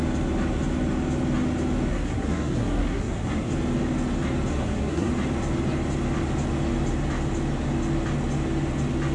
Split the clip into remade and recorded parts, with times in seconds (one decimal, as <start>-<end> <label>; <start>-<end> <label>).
0.0-1.9 recorded; 1.9-3.5 remade; 3.5-4.5 recorded; 4.5-5.1 remade; 5.1-9.1 recorded